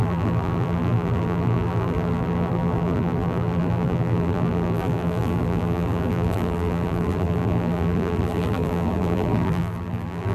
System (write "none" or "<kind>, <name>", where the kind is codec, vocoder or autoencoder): vocoder, BigVGAN v2